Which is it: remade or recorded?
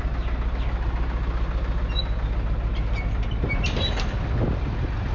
recorded